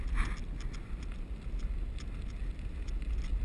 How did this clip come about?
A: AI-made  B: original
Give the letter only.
B